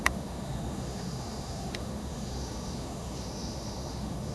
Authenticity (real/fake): fake